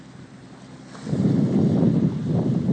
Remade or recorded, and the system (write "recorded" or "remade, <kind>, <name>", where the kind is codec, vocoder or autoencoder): recorded